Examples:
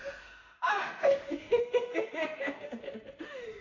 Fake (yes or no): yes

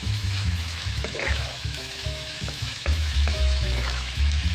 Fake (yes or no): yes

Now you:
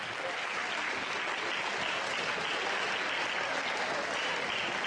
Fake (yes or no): no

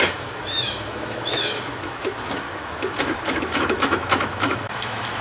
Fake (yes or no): yes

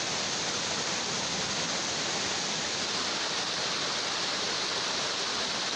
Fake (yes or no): no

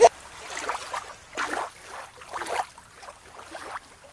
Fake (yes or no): no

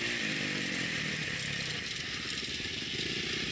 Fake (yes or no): no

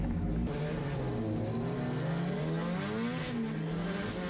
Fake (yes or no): no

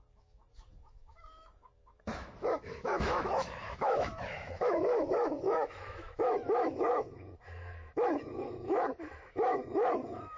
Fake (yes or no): yes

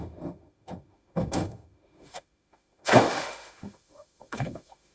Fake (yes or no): yes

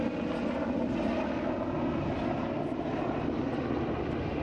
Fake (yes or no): no